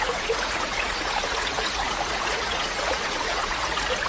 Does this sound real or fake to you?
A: fake